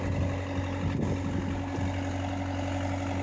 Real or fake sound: real